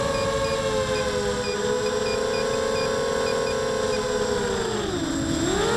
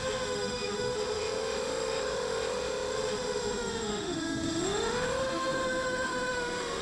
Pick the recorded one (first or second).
first